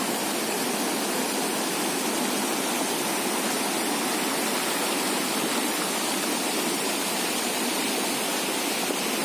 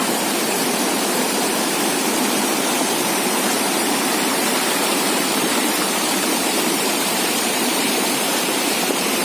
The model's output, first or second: second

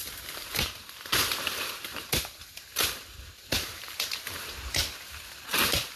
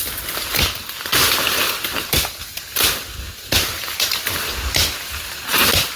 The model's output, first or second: first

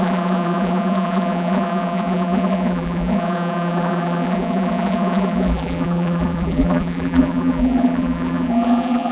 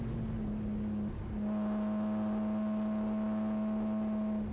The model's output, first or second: first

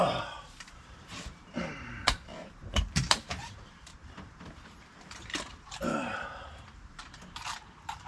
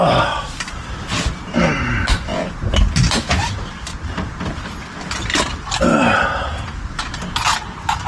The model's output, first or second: first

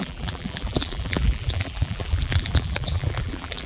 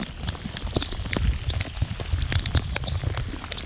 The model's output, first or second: first